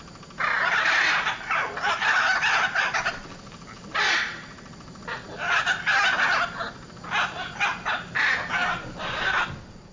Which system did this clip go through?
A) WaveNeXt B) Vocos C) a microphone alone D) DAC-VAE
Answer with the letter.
C